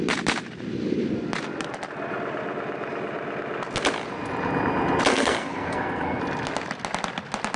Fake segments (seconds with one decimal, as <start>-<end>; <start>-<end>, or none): 5.1-6.2